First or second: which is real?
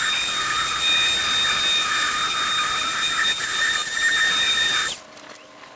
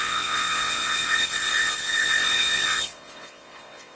first